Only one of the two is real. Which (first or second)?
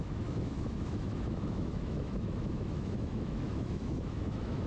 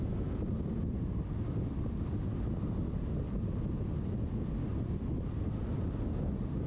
second